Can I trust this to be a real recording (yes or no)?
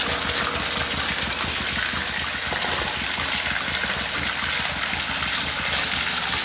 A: yes